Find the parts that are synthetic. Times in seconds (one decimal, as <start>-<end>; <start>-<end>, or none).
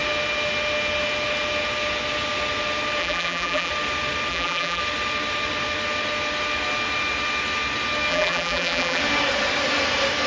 3.0-3.7; 4.3-4.8; 8.1-9.0